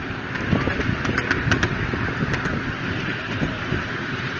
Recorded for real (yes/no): yes